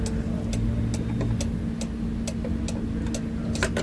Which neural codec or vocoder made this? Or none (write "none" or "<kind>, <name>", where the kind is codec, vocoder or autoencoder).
none